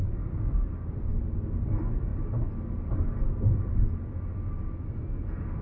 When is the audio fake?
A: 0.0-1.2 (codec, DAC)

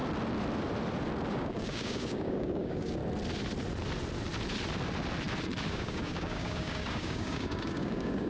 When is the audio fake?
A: 1.3-3.0 (codec, DAC); 5.7-8.3

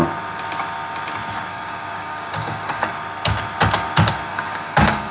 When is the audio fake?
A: 1.5-2.9 (codec, DAC); 4.3-5.1

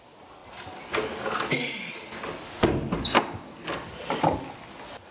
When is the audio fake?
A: none

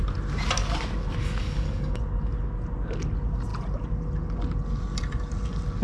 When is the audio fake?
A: 1.2-2.0 (codec, DAC)

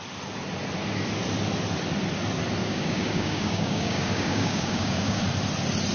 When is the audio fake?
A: 2.6-5.2 (codec, DAC)